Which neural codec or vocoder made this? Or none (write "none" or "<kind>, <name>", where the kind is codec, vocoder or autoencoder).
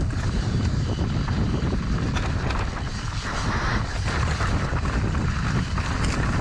vocoder, BigVGAN v2